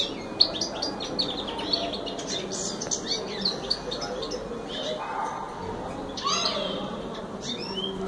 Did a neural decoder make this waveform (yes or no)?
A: no